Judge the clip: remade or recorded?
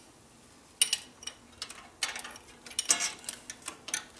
recorded